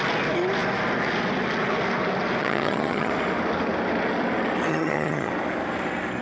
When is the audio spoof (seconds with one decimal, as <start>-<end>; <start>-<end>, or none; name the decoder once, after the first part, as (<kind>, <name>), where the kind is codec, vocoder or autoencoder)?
2.4-3.1 (vocoder, HiFi-GAN); 4.7-5.3